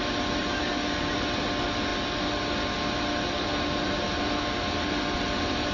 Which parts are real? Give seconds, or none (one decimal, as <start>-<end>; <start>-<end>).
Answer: 0.0-5.7